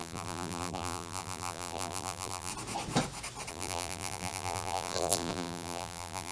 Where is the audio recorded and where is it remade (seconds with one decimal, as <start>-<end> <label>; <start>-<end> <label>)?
0.0-2.5 remade; 2.5-3.5 recorded; 3.5-6.3 remade